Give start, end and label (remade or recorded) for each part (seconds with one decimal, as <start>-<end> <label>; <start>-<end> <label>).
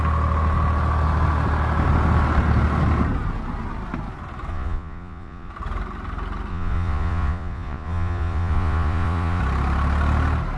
0.0-4.5 recorded; 4.5-5.5 remade; 5.5-6.5 recorded; 6.5-9.4 remade; 9.4-10.6 recorded